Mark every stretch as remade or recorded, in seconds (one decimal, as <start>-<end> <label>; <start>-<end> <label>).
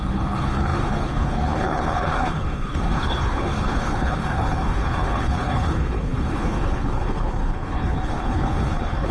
0.0-9.1 remade